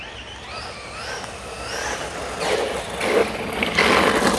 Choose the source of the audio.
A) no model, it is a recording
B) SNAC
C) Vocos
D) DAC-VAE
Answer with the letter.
A